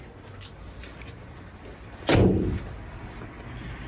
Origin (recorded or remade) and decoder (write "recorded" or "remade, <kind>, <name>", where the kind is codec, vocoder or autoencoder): remade, vocoder, BigVGAN v2